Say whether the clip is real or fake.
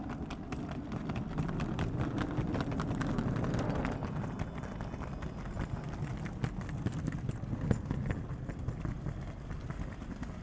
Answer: real